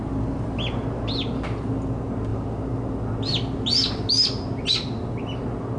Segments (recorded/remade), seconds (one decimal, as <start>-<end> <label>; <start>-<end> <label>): 0.0-5.8 recorded